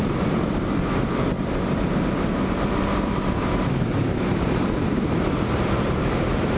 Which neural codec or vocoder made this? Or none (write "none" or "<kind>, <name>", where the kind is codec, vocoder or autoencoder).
vocoder, BigVGAN v2